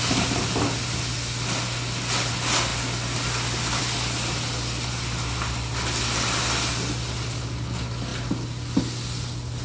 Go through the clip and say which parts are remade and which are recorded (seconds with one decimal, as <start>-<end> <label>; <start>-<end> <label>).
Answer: 0.0-9.6 recorded